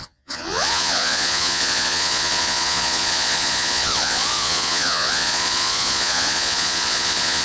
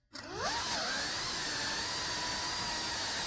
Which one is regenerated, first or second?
first